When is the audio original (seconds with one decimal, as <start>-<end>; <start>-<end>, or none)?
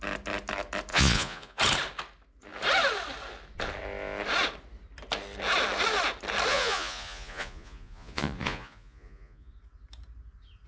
0.0-0.9; 1.6-6.5; 9.5-10.7